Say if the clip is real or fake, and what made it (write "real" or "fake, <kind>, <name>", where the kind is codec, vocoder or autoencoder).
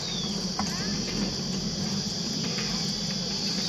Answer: real